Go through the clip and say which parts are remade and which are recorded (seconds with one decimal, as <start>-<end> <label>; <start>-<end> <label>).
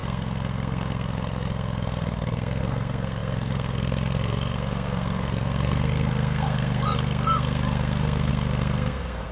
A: 0.0-9.3 remade